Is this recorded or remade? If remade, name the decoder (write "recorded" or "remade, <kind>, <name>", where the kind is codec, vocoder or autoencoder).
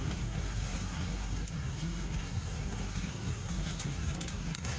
remade, codec, SNAC